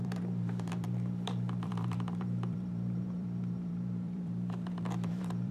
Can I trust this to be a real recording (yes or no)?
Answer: no